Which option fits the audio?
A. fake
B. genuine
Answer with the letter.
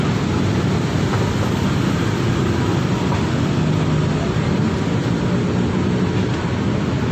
B